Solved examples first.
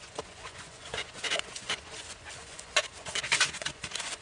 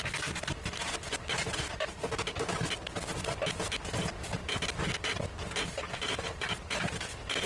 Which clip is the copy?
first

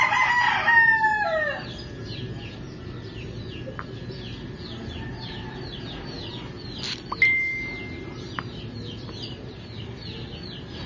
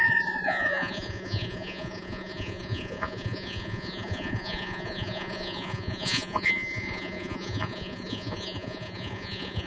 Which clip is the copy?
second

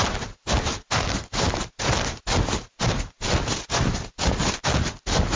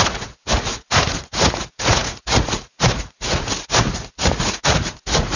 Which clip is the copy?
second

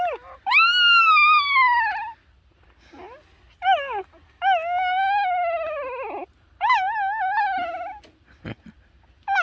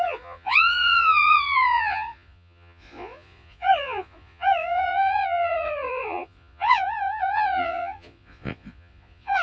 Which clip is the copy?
second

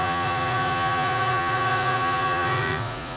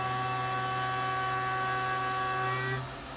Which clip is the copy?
first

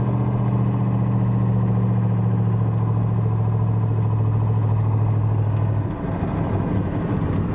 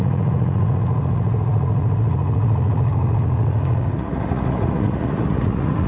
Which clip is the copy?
second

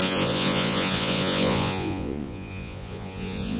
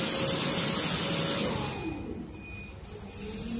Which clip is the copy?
first